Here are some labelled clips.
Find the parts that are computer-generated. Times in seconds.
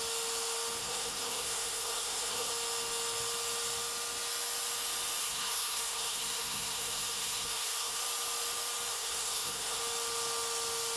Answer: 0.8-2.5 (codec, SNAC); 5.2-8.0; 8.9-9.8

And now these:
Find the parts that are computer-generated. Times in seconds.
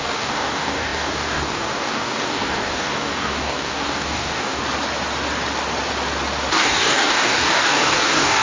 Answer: 0.0-4.6 (codec, DAC); 6.5-8.4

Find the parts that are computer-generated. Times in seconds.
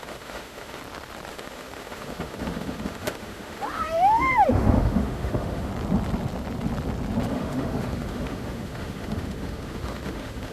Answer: 0.0-0.8 (autoencoder, DAC-VAE); 1.3-5.7; 7.3-10.5